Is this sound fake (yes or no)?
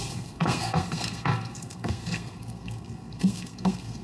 yes